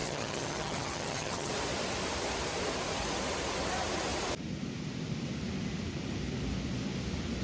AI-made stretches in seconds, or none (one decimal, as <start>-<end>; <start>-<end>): 0.0-1.5

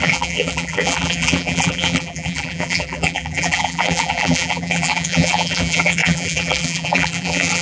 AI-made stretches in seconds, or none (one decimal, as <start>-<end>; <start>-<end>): 0.0-7.6

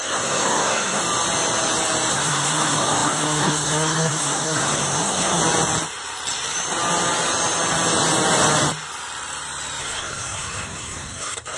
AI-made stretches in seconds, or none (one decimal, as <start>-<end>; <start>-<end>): 0.0-1.0; 2.1-5.4; 9.8-11.6